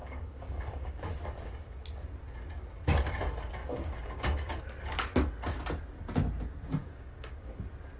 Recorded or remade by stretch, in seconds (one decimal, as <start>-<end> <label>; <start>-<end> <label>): 0.0-1.2 remade; 1.2-3.6 recorded; 3.6-4.6 remade; 4.6-6.8 recorded; 6.8-7.6 remade; 7.6-8.0 recorded